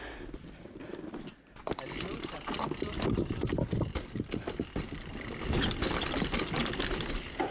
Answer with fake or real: real